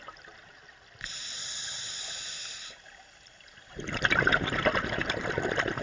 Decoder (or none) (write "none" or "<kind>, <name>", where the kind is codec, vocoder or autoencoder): none